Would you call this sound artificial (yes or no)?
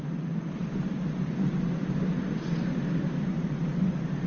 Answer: no